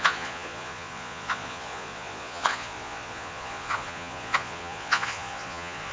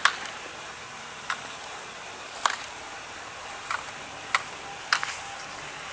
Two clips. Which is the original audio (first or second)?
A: second